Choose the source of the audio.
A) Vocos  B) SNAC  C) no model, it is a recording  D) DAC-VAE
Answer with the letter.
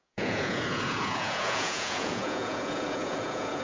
A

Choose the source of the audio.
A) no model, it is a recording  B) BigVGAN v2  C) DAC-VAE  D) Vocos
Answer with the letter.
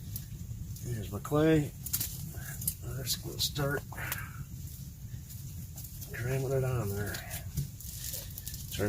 A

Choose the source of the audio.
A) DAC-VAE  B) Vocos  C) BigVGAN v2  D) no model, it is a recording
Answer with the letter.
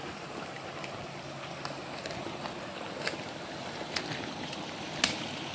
D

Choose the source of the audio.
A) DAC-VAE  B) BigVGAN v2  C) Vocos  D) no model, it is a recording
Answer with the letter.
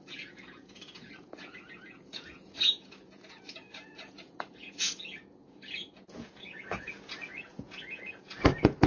C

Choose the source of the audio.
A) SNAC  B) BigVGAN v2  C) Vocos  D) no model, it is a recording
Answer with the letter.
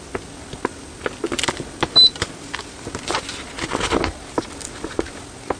D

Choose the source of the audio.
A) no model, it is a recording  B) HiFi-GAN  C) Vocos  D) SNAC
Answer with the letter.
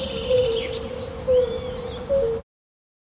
A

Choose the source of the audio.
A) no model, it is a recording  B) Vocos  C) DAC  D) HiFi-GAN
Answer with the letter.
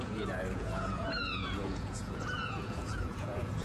B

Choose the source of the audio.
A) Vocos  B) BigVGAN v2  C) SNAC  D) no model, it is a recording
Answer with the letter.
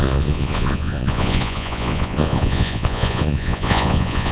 A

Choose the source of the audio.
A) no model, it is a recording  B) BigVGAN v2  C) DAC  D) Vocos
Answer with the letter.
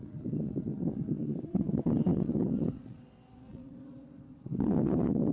D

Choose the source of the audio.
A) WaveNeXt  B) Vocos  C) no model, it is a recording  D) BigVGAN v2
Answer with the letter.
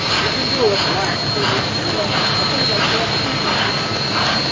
C